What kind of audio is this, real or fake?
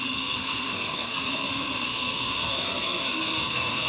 fake